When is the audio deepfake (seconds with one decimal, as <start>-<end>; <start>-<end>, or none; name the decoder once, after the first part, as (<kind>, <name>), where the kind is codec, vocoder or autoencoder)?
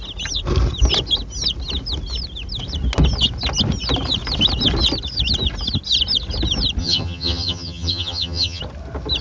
6.8-8.6 (vocoder, HiFi-GAN)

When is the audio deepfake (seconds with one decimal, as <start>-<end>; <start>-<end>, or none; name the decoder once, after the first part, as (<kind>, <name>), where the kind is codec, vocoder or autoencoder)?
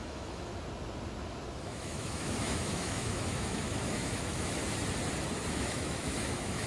0.0-0.5 (autoencoder, DAC-VAE); 1.6-4.6; 5.5-6.7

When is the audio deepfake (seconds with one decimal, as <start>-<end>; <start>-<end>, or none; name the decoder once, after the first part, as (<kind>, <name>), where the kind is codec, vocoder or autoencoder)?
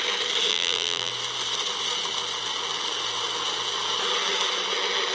0.5-1.1 (vocoder, BigVGAN v2)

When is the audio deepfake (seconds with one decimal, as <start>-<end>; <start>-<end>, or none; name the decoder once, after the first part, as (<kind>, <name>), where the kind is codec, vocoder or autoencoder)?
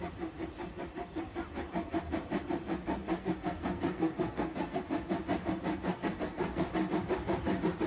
3.0-4.8 (codec, SNAC); 5.7-6.7